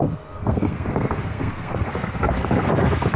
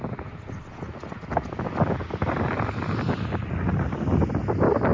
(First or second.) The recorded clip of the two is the second